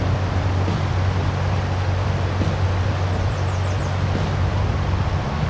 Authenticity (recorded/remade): recorded